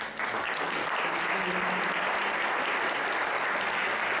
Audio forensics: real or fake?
real